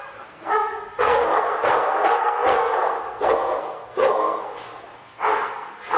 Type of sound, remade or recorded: remade